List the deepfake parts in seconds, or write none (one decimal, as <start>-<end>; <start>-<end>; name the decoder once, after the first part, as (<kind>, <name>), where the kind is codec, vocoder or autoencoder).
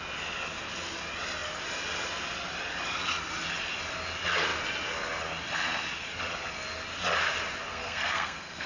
7.7-8.7 (codec, SNAC)